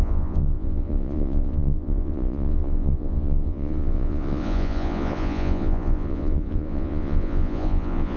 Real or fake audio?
fake